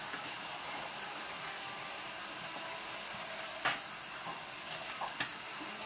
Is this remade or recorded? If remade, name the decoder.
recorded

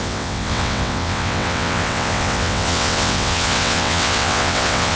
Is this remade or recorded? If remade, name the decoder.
remade, vocoder, WaveNeXt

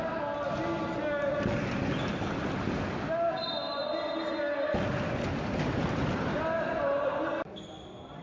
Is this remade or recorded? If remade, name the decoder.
recorded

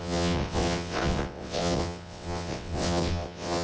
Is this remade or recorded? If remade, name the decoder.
remade, vocoder, WaveNeXt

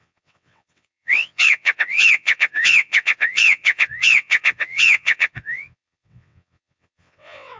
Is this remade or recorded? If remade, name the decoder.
remade, vocoder, WaveNeXt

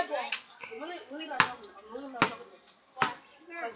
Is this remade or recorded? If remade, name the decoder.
recorded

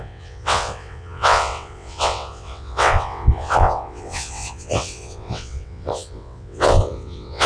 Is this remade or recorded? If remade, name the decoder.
remade, vocoder, WaveNeXt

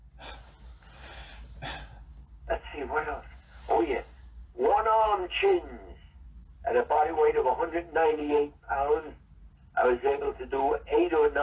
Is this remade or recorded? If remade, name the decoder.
recorded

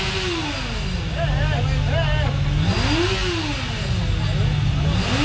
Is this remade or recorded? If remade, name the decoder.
recorded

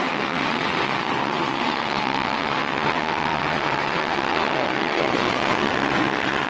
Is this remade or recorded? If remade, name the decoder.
remade, vocoder, WaveNeXt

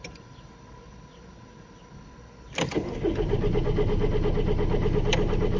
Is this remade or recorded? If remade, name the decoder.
recorded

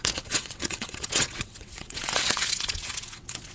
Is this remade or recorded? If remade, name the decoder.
remade, vocoder, WaveNeXt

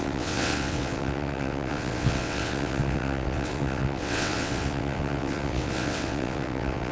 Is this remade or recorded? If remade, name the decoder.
remade, vocoder, WaveNeXt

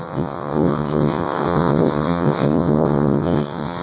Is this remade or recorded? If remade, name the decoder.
remade, vocoder, WaveNeXt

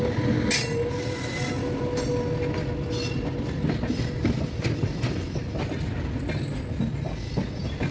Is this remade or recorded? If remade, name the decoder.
recorded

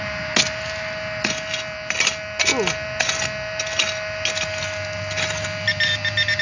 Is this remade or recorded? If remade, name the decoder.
recorded